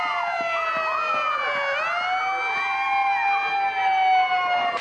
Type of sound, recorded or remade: recorded